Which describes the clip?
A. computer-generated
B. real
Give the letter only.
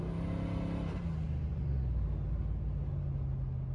B